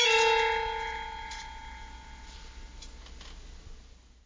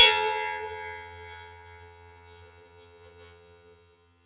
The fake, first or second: second